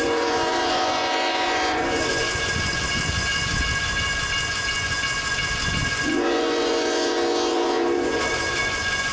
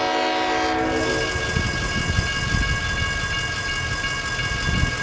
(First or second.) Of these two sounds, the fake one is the first